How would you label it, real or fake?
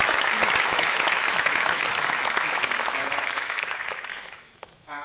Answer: fake